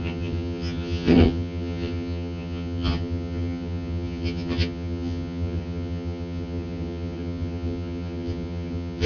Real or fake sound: fake